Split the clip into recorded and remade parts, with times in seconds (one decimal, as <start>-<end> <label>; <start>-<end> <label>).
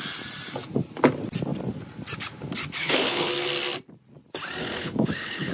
0.0-2.8 recorded; 2.8-3.3 remade; 3.3-4.6 recorded; 4.6-5.5 remade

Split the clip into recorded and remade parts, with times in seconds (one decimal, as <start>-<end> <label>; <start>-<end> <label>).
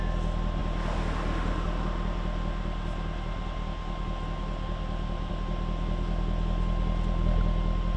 0.0-8.0 recorded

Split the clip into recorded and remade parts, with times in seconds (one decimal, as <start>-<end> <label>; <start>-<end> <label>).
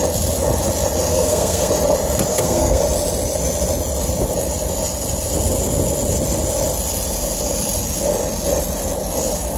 0.0-1.1 recorded; 1.1-1.7 remade; 1.7-2.3 recorded; 2.3-2.8 remade; 2.8-9.6 recorded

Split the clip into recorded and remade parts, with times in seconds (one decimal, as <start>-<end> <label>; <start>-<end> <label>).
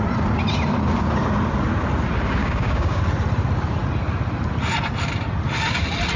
0.0-2.4 recorded; 2.4-3.0 remade; 3.0-6.2 recorded